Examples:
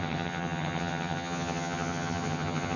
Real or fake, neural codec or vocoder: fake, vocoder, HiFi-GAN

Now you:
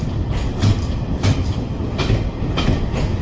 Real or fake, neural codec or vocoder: real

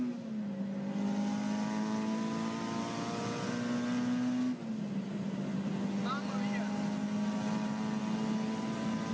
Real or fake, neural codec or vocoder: real